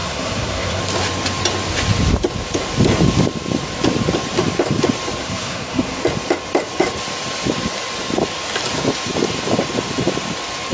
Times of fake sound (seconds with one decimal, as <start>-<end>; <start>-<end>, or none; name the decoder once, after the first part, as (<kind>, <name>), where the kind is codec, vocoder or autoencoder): 0.0-0.8 (codec, SNAC); 5.2-6.0